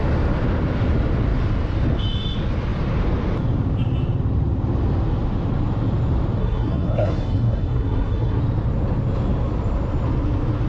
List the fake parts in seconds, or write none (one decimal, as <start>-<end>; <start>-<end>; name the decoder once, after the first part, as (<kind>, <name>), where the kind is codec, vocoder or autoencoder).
6.4-8.4 (codec, SNAC)